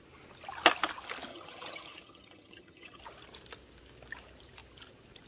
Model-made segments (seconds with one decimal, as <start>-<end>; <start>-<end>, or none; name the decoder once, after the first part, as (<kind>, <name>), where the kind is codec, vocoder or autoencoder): 1.3-3.0 (vocoder, HiFi-GAN)